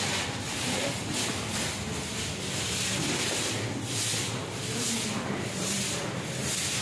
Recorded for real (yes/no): yes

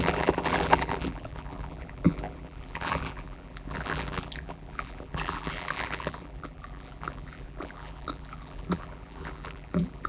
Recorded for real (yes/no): no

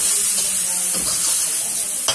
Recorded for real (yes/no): yes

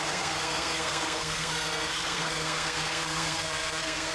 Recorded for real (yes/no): no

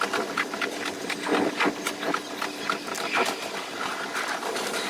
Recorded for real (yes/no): yes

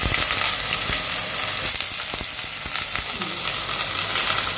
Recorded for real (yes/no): yes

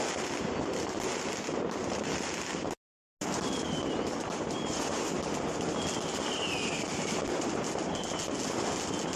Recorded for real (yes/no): yes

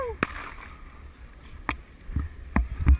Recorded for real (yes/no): yes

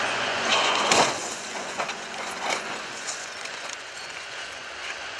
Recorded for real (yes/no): no